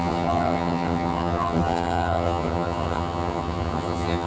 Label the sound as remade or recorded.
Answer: remade